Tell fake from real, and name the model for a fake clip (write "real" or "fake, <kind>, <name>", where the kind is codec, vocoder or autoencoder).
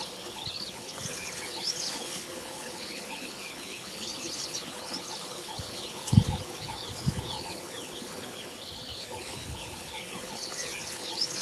fake, codec, HILCodec